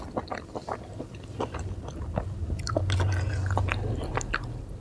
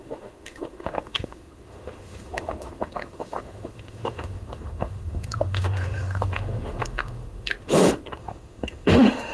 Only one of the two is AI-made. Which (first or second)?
second